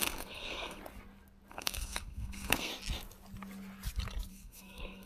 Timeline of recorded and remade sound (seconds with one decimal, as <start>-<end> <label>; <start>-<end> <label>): 0.0-0.8 remade; 0.8-1.5 recorded; 1.5-2.7 remade; 2.7-4.3 recorded; 4.3-5.1 remade